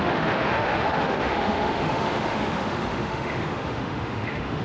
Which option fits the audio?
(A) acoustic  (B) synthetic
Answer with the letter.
B